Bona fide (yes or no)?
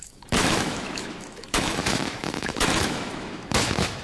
no